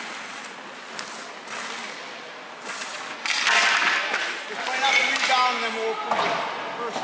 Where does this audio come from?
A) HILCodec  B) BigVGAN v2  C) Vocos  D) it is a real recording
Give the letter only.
D